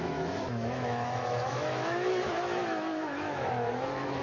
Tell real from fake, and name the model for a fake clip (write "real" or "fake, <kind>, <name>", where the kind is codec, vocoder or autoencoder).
fake, autoencoder, DAC-VAE